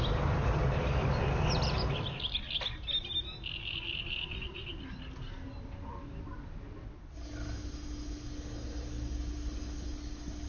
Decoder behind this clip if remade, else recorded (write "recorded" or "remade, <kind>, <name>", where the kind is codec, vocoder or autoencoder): recorded